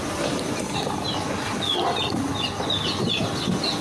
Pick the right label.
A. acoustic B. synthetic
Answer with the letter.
A